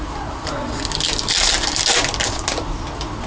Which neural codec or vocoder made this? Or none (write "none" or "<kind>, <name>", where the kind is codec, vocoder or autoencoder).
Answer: none